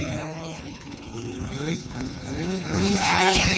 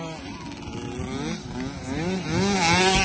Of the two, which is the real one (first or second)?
second